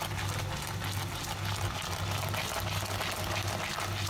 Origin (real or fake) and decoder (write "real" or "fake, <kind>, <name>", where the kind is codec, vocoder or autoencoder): real